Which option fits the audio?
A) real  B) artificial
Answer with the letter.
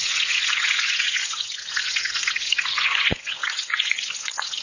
B